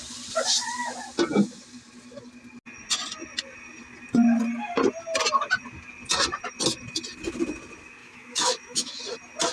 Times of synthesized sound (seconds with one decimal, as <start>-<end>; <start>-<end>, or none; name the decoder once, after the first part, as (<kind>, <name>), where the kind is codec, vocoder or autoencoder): 8.0-9.0 (autoencoder, DAC-VAE)